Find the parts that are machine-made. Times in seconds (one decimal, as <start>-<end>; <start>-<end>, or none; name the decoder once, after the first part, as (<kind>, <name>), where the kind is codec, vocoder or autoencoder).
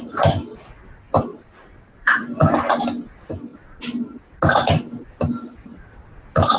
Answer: 1.3-2.1 (vocoder, BigVGAN v2)